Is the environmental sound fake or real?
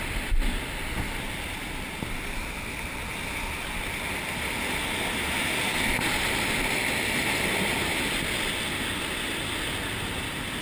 real